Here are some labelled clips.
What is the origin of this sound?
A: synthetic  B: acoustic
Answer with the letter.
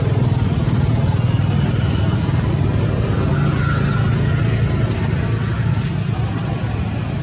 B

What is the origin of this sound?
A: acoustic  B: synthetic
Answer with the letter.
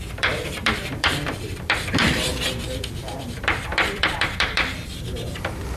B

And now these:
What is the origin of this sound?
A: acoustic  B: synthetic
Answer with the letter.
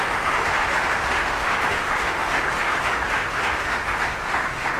B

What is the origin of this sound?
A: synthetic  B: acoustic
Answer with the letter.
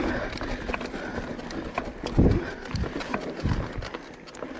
B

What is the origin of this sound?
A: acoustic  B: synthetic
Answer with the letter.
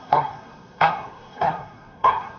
B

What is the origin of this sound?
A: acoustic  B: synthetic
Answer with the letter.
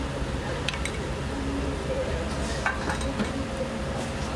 A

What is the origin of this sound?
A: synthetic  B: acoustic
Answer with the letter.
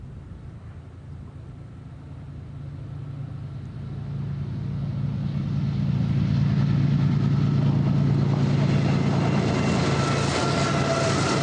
B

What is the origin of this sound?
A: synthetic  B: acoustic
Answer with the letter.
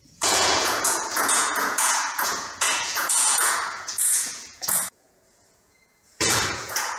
A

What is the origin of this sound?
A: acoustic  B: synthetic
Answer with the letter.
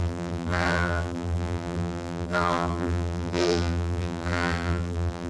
B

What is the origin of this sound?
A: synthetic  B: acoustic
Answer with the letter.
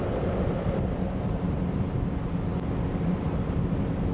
B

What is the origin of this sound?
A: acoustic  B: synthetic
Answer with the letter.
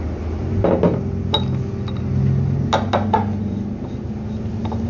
A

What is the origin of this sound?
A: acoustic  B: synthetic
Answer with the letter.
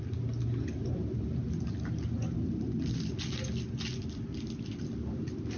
A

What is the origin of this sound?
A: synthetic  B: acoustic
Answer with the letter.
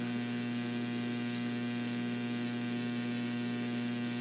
B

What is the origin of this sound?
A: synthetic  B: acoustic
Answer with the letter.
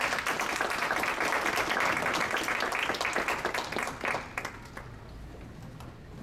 B